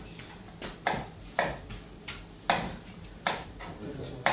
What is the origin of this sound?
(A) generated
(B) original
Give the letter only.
B